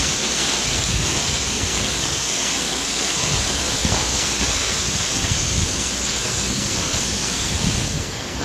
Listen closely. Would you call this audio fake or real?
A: fake